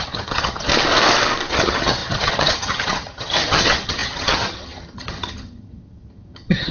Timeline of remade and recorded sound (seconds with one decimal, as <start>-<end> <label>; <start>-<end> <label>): 0.0-0.7 remade; 0.7-1.5 recorded; 1.5-6.7 remade